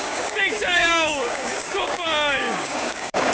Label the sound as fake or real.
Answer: fake